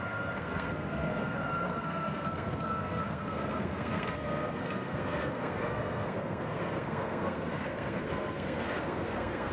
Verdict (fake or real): fake